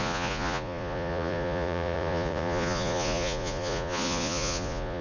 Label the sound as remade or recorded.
remade